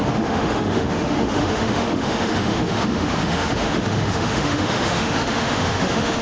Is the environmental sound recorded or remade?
remade